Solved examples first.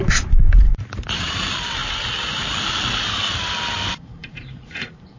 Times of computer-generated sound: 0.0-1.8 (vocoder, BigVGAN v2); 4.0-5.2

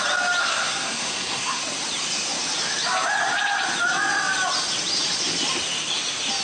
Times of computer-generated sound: 0.4-1.6 (codec, SNAC)